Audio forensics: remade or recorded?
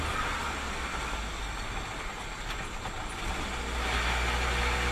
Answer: recorded